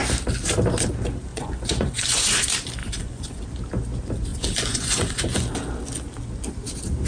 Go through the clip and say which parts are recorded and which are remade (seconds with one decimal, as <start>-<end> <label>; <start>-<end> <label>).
0.0-1.3 recorded; 1.3-2.4 remade; 2.4-2.8 recorded; 2.8-3.4 remade; 3.4-4.3 recorded; 4.3-5.5 remade; 5.5-7.1 recorded